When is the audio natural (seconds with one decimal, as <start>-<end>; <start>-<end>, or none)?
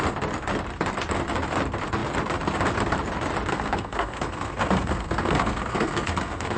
0.0-3.5